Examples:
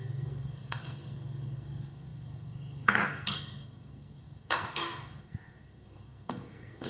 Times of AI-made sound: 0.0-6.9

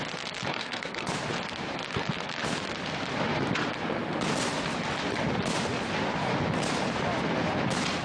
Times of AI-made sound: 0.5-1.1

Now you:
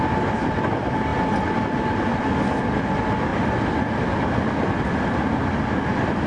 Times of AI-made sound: none

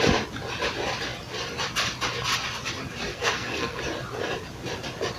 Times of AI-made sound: 3.1-3.8

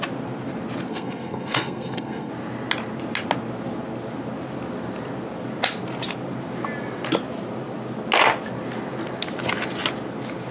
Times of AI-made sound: 0.9-2.3

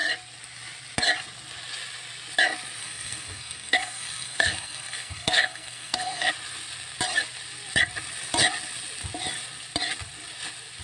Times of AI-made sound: 2.8-6.3

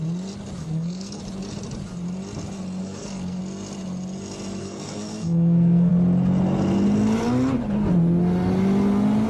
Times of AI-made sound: 0.6-1.2; 2.8-3.4; 4.6-5.9